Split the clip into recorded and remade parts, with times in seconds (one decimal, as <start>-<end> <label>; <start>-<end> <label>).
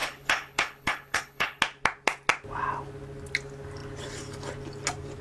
0.0-1.6 remade; 1.6-5.2 recorded